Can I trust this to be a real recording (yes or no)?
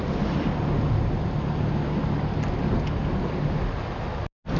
yes